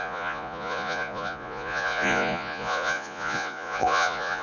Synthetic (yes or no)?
yes